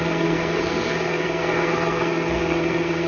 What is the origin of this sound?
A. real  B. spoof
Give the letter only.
B